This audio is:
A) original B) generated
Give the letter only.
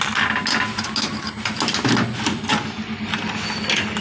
A